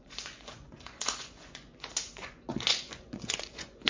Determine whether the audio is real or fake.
fake